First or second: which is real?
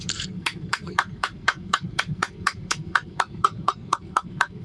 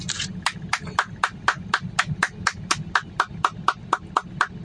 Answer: second